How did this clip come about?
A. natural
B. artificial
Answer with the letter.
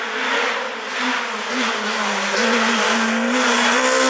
A